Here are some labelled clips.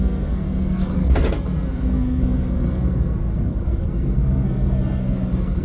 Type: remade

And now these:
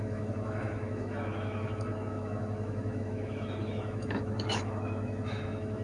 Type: remade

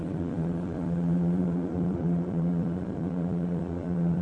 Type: remade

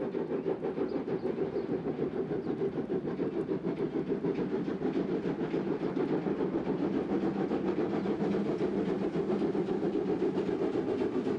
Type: recorded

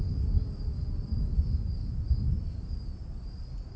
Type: recorded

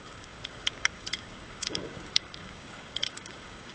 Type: remade